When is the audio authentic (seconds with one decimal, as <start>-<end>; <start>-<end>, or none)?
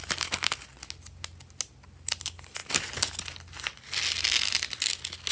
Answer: 0.0-5.3